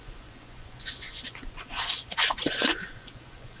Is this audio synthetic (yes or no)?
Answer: yes